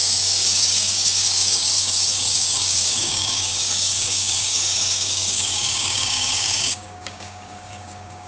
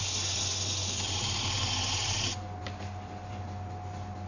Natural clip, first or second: second